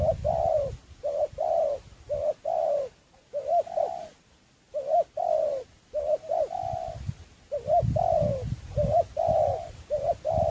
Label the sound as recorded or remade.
recorded